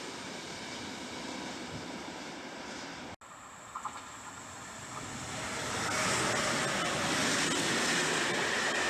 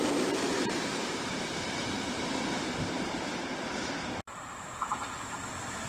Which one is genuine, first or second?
first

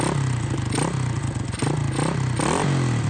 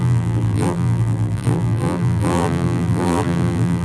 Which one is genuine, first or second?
first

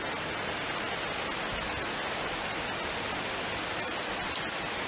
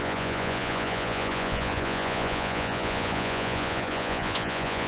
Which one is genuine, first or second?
first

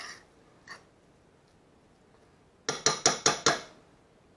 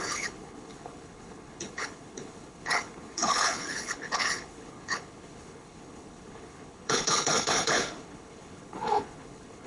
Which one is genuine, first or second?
first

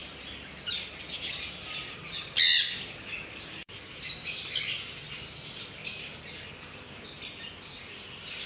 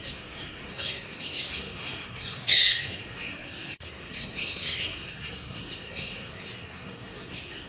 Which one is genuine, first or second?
first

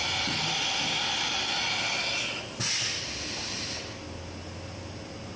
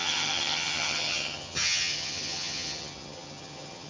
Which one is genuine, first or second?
first